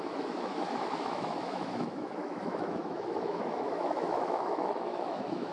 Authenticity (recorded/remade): remade